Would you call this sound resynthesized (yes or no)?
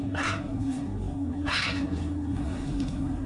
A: yes